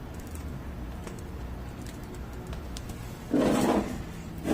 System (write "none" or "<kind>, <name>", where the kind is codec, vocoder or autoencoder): none